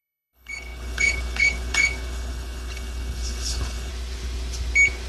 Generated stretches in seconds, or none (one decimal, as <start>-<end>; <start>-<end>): 0.0-3.9